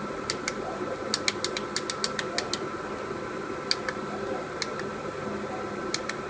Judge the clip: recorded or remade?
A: recorded